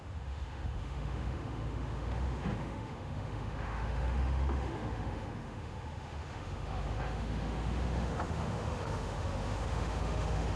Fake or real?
fake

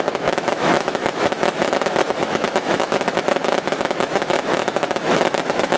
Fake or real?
fake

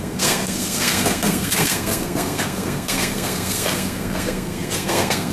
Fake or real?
fake